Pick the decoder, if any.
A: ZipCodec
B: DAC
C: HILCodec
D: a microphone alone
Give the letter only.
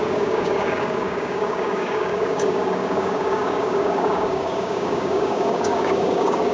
B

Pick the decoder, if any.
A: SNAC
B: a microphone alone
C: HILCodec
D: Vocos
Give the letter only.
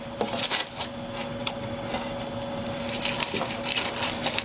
B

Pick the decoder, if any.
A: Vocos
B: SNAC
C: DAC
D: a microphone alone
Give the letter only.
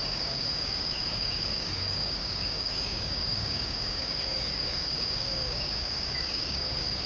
C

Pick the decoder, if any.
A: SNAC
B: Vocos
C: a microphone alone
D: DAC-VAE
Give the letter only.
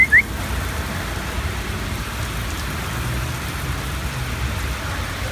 C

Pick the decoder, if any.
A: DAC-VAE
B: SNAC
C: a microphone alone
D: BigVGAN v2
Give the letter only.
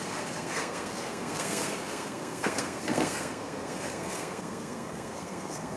B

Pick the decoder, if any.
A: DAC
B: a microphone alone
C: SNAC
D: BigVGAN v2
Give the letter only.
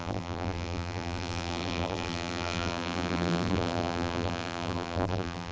D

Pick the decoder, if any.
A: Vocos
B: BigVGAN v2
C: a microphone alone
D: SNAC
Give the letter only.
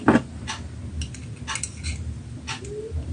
C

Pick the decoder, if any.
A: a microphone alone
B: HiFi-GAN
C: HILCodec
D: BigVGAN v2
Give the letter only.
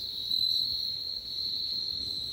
D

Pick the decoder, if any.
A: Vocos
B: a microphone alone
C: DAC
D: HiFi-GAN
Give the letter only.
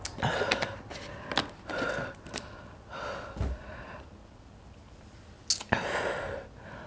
B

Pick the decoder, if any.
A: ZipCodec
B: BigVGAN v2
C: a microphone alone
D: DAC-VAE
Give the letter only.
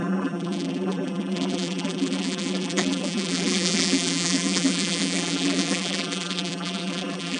B